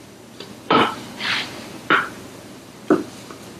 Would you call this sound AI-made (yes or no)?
yes